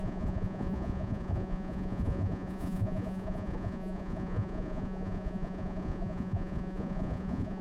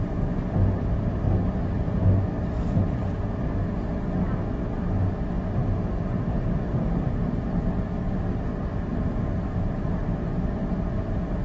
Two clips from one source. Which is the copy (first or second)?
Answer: first